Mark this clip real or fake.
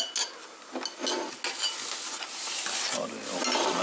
real